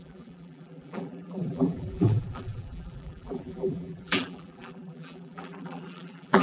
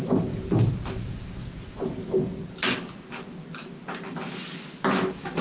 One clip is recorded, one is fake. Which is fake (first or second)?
first